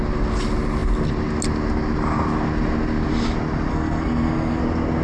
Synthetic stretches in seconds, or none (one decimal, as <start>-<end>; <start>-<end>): 3.7-4.6